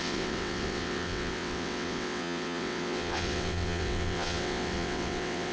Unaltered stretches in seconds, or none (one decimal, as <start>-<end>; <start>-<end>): none